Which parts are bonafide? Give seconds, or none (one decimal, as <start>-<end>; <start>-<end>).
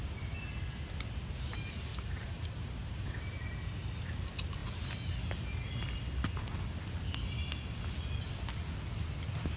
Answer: 0.0-1.9; 3.6-9.6